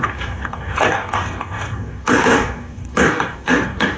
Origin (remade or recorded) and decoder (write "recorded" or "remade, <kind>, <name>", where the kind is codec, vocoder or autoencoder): remade, codec, DAC